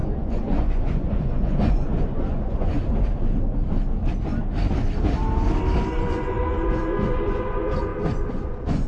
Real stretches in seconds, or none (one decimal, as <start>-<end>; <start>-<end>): 2.8-6.0